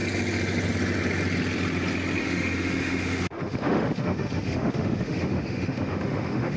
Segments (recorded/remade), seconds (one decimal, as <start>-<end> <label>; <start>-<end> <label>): 0.0-2.2 recorded; 2.2-6.6 remade